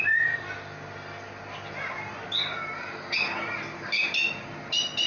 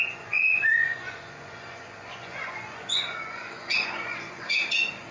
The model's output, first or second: second